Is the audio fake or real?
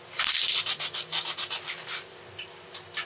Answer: real